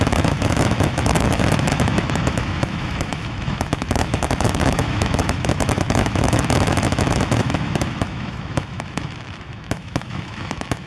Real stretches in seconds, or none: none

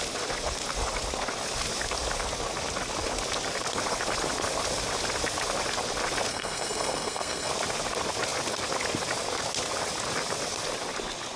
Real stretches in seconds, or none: 0.0-6.3; 7.5-11.4

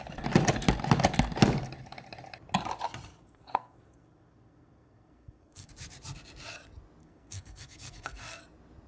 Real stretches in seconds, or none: 0.0-3.1; 5.7-7.0; 8.4-8.9

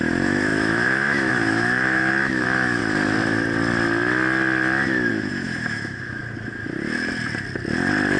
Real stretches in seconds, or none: 2.8-5.1; 6.2-8.2